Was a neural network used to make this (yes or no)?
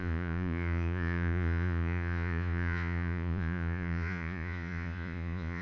yes